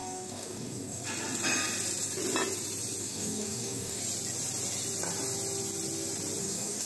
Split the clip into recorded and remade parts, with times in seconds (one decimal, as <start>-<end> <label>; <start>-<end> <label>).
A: 0.0-1.0 remade; 1.0-3.0 recorded; 3.0-4.0 remade; 4.0-6.4 recorded; 6.4-6.9 remade